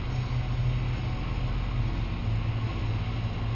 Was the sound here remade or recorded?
recorded